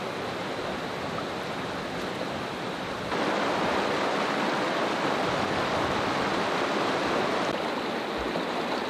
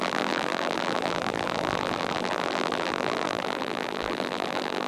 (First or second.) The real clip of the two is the first